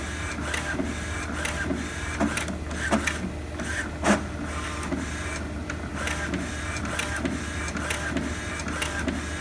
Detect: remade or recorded recorded